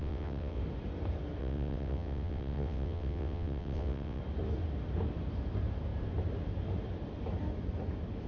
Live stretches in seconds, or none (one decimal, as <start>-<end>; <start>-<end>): 0.6-1.4; 4.2-8.3